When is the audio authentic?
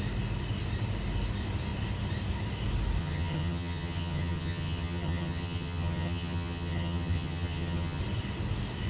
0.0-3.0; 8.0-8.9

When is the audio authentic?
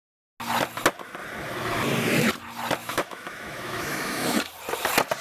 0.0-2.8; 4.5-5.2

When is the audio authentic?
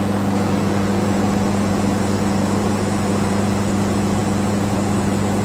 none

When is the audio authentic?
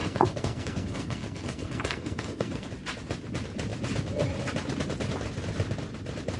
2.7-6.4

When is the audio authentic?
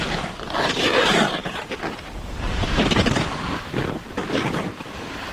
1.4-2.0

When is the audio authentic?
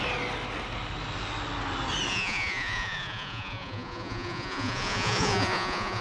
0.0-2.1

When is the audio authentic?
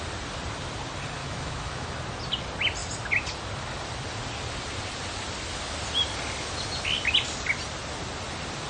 0.0-1.2; 1.9-8.7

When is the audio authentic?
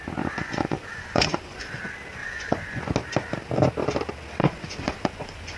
0.0-0.4; 1.8-2.2; 2.8-4.4